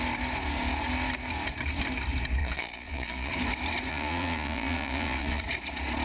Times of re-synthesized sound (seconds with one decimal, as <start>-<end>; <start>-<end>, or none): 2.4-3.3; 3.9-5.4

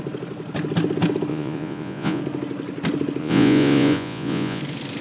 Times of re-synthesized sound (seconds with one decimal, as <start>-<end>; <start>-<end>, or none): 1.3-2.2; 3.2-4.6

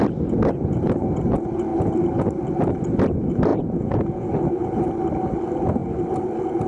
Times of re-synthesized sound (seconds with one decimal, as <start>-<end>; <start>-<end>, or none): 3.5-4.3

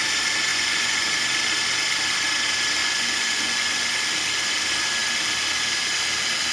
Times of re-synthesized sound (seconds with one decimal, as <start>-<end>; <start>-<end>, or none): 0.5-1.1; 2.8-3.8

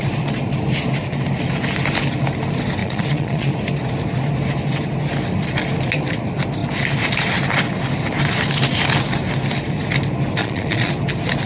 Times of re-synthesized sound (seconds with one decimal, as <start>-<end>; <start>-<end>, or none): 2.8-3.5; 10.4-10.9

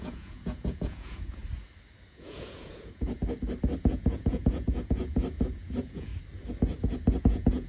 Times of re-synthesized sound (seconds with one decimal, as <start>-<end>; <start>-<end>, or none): 0.0-1.4; 2.1-3.2; 3.8-6.1; 7.2-7.7

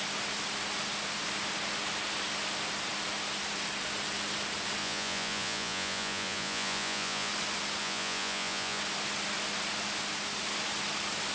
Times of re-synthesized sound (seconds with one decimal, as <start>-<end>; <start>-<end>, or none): 4.8-7.3; 7.8-8.8